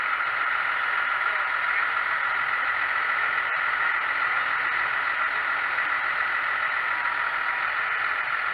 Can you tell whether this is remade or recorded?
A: recorded